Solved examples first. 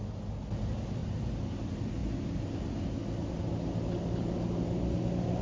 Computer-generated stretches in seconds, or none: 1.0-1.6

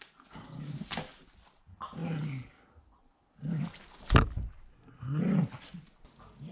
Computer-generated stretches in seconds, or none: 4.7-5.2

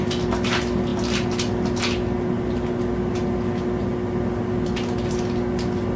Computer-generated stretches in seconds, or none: none